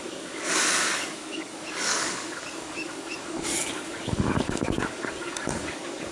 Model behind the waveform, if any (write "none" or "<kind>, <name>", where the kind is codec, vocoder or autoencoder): codec, DAC